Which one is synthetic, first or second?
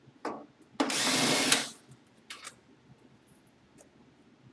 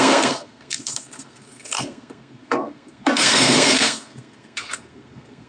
second